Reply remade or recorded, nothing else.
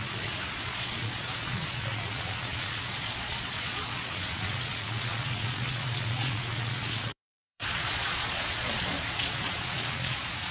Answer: remade